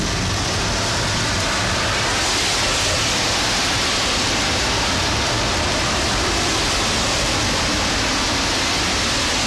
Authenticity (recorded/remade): recorded